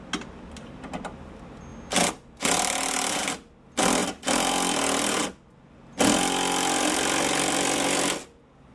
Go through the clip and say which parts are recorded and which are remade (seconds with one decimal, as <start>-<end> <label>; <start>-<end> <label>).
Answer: 0.0-8.7 recorded